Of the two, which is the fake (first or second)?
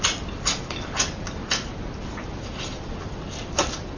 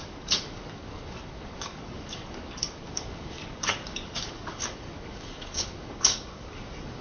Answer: second